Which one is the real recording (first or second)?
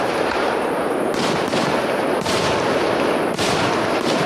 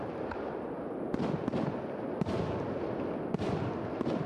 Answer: second